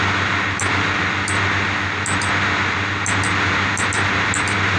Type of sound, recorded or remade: recorded